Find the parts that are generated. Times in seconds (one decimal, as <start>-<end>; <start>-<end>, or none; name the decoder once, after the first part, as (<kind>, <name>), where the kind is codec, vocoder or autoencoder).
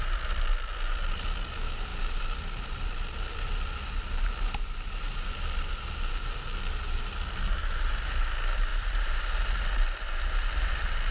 1.9-3.4 (vocoder, BigVGAN v2); 8.7-10.0